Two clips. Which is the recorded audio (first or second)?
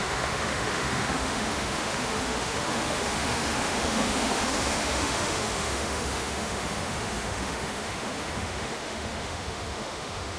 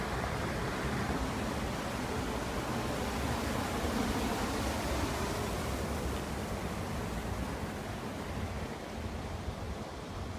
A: second